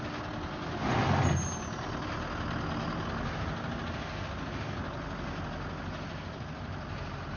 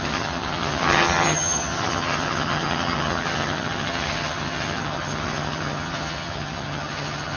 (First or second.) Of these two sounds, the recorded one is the first